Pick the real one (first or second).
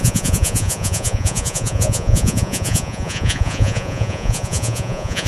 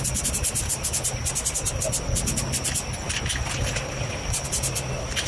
second